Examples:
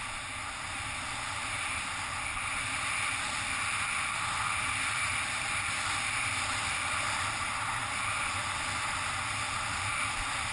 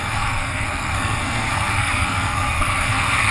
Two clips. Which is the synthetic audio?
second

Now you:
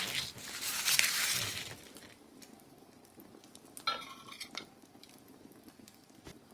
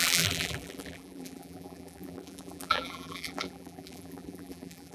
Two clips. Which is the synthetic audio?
second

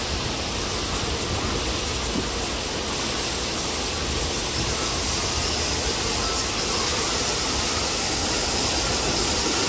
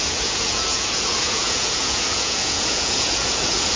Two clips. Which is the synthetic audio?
second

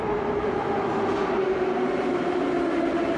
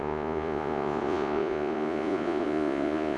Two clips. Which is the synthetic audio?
second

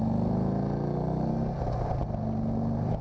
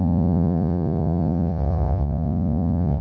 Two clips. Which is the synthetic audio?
second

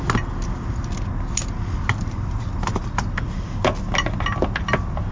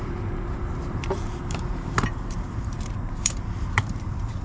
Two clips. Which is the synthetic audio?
second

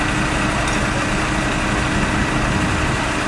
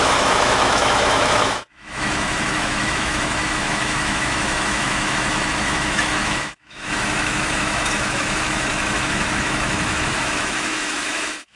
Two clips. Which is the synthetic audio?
second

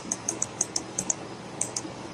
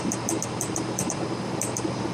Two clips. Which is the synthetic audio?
first